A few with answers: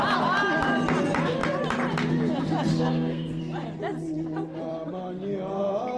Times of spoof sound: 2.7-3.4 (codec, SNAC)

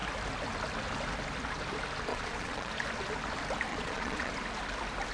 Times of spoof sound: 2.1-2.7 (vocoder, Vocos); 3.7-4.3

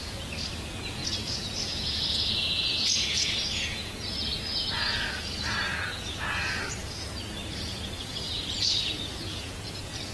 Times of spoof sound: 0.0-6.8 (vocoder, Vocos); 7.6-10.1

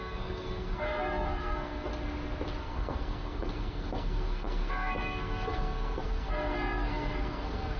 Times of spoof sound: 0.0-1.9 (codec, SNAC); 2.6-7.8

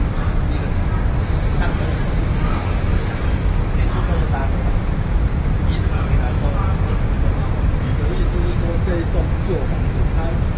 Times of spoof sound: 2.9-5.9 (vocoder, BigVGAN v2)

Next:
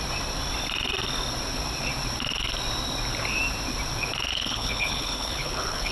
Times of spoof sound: 4.3-5.9 (codec, HILCodec)